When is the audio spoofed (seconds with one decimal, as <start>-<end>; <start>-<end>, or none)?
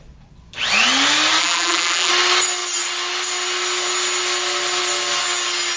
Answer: 1.4-2.1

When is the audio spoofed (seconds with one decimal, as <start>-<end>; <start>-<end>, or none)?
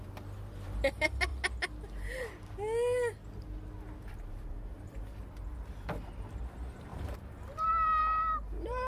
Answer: 0.0-1.3; 4.1-5.2; 5.7-8.9